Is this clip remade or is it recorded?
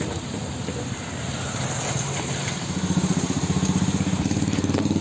remade